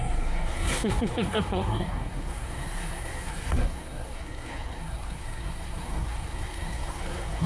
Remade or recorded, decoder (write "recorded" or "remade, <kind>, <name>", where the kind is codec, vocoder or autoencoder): remade, codec, SNAC